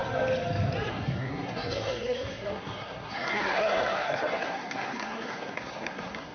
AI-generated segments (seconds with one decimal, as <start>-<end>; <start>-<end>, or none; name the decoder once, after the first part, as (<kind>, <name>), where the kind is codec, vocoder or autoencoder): 0.9-6.3 (codec, SNAC)